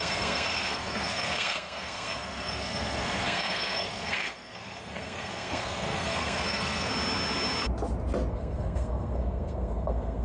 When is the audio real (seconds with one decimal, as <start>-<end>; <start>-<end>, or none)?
6.9-8.3